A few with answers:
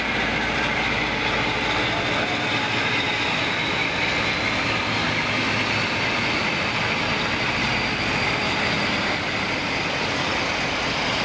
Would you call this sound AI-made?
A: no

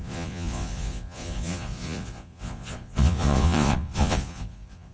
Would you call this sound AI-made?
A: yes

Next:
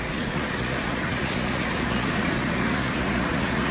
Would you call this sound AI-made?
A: yes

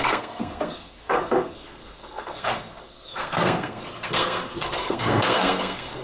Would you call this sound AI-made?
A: yes